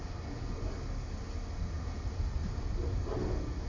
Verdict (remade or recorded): recorded